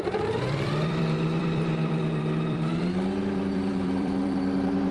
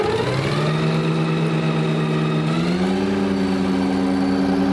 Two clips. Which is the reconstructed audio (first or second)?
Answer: first